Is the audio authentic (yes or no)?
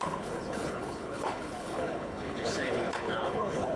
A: no